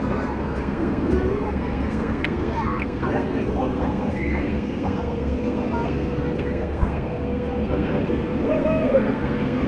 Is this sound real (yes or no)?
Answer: no